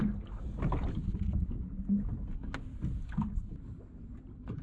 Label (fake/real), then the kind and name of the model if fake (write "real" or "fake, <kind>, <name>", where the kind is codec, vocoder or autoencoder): real